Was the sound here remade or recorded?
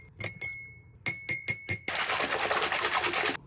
recorded